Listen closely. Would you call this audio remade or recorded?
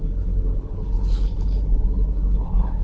remade